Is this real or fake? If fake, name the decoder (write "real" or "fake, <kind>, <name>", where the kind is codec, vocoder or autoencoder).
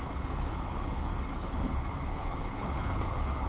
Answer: fake, codec, HILCodec